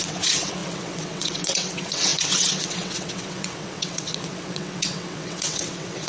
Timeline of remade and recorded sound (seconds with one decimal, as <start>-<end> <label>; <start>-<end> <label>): 0.0-6.1 remade